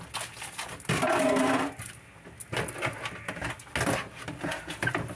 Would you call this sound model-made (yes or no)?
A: no